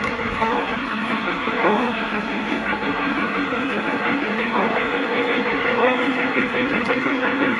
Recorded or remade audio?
remade